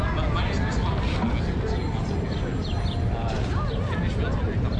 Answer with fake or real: real